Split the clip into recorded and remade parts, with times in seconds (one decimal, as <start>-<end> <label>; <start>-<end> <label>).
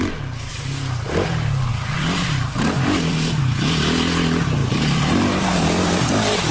0.0-1.7 recorded; 1.7-3.4 remade; 3.4-4.6 recorded; 4.6-6.1 remade; 6.1-6.5 recorded